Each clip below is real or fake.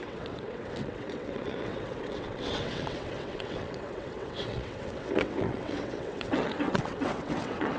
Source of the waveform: fake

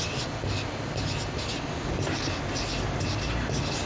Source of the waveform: real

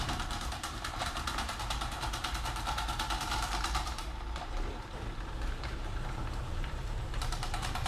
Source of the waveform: fake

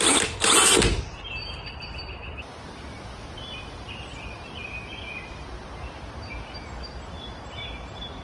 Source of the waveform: real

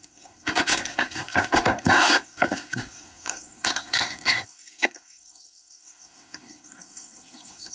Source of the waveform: fake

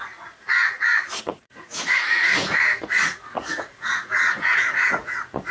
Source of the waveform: fake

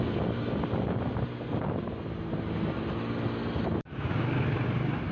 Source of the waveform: real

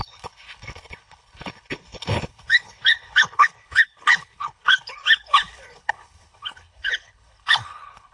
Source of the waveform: fake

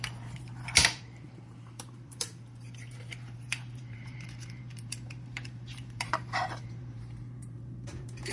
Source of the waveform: fake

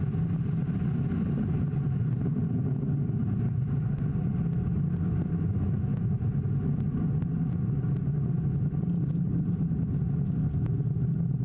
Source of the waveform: real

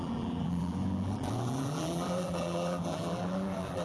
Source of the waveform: fake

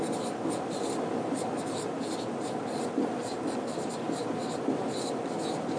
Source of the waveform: real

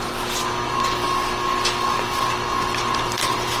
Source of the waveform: real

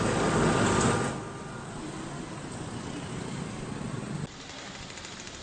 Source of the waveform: real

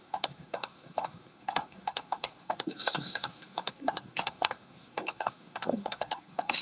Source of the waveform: fake